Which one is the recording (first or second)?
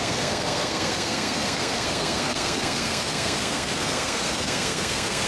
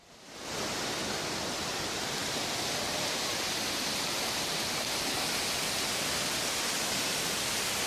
second